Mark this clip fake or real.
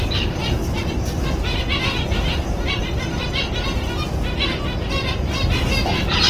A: real